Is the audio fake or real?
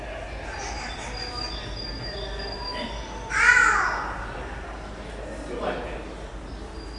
real